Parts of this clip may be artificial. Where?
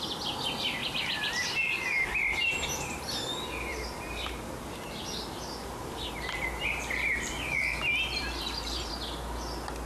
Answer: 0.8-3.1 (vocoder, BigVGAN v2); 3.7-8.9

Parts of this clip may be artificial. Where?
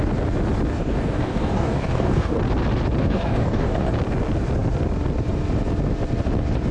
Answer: 0.7-2.4 (codec, DAC); 3.0-3.9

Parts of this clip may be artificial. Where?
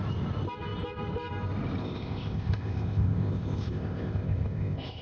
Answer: 1.8-5.0 (codec, ZipCodec)